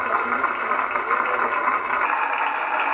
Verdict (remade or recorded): recorded